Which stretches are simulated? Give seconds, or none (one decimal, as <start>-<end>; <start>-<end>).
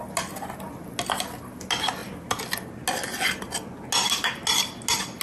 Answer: none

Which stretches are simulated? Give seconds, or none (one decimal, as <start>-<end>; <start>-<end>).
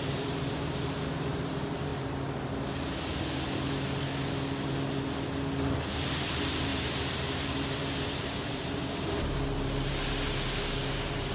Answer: 0.0-1.9; 6.1-11.3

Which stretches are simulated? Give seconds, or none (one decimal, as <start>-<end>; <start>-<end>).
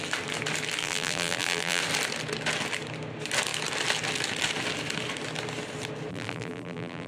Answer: 0.8-1.8; 6.1-7.1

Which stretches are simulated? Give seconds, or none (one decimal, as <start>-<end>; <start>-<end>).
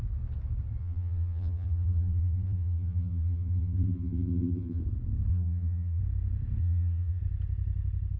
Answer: 0.8-4.8; 5.3-6.0; 6.6-7.2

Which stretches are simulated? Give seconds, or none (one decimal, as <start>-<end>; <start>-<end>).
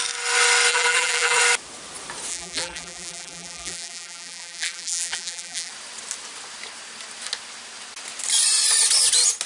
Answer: 0.7-1.4; 2.3-5.7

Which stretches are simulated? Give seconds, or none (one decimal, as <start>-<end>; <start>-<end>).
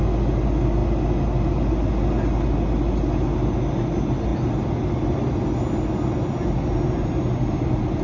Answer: none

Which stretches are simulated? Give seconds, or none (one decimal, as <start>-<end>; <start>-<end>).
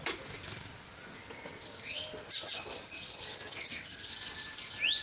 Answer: 0.0-2.0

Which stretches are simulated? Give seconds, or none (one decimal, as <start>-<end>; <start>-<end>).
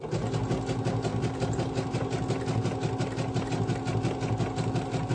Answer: none